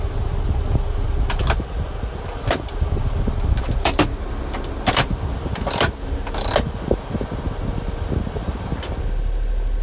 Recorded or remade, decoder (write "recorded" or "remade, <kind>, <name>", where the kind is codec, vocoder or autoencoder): recorded